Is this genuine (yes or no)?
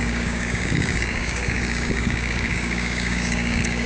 no